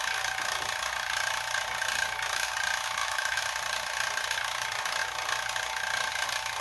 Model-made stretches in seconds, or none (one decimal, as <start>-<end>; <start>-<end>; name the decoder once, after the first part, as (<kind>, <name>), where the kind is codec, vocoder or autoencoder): 3.0-3.5 (autoencoder, DAC-VAE)